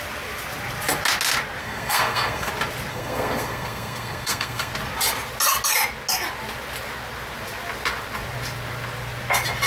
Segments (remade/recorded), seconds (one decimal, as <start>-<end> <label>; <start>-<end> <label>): 0.0-1.6 recorded; 1.6-2.5 remade; 2.5-2.9 recorded; 2.9-4.7 remade; 4.7-9.7 recorded